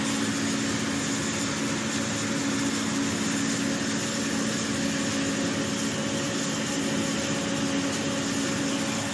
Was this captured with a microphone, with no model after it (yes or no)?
yes